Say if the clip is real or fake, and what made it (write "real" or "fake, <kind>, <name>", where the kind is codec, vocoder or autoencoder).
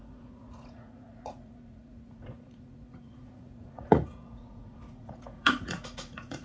fake, vocoder, Vocos